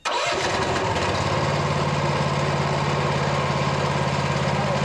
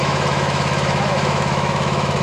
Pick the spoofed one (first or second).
second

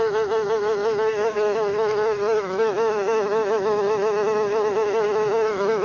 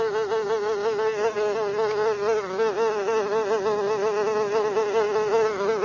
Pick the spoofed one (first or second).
first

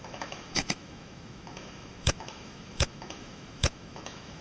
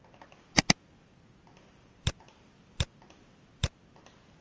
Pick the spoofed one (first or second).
first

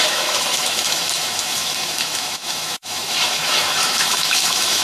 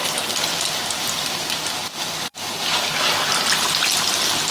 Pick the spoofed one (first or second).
first